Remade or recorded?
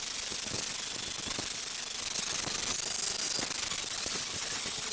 recorded